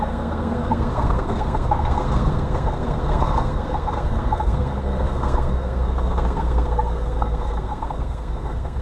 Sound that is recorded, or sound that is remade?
remade